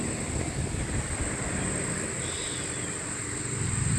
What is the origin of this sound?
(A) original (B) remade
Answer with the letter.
A